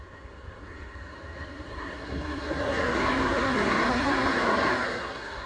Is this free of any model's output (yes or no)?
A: no